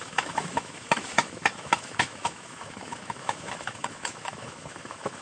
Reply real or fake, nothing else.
fake